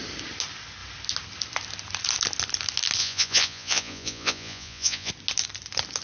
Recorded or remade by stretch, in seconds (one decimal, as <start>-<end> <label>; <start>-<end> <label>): 0.0-3.0 recorded; 3.0-5.1 remade; 5.1-6.0 recorded